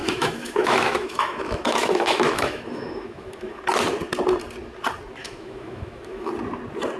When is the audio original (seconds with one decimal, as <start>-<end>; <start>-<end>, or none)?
3.6-5.2; 6.3-7.0